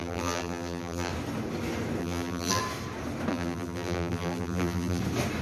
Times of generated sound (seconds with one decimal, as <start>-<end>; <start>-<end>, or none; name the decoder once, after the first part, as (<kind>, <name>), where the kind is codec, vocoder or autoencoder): 0.0-1.1 (vocoder, BigVGAN v2); 2.0-2.6; 3.3-5.0